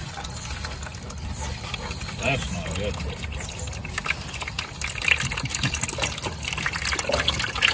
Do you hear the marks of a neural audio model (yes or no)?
no